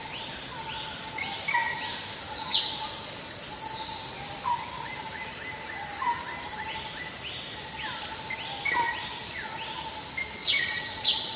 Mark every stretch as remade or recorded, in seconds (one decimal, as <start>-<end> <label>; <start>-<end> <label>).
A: 0.0-10.4 recorded; 10.4-11.4 remade